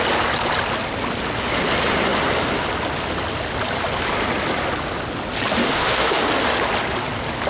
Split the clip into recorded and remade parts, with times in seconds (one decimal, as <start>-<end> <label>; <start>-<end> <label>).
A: 0.0-5.6 recorded; 5.6-6.2 remade; 6.2-7.5 recorded